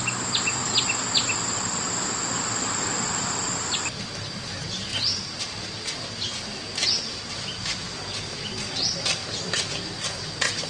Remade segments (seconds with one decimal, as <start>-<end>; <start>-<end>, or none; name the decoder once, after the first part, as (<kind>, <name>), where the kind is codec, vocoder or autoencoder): 9.2-10.1 (vocoder, BigVGAN v2)